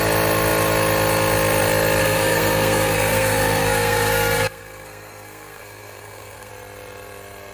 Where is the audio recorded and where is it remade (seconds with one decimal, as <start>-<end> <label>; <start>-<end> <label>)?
0.0-2.0 recorded; 2.0-6.5 remade; 6.5-7.5 recorded